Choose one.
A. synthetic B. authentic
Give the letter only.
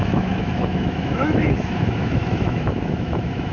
A